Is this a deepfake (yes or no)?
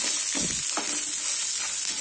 no